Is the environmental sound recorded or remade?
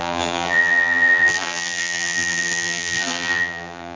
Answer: remade